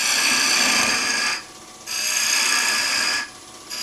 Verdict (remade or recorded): recorded